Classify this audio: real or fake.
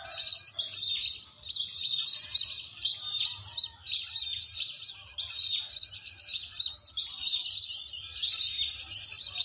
real